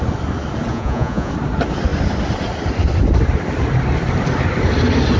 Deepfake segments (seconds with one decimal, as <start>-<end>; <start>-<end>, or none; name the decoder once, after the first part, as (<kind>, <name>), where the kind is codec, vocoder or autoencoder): 0.7-1.3 (vocoder, Vocos)